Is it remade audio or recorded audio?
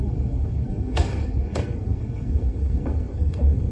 remade